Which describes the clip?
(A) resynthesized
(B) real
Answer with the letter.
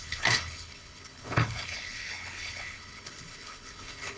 A